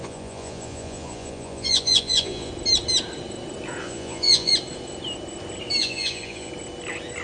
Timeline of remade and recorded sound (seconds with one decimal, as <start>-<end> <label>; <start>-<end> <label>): 0.0-2.5 remade; 2.5-3.8 recorded; 3.8-4.5 remade; 4.5-5.8 recorded; 5.8-6.5 remade; 6.5-7.2 recorded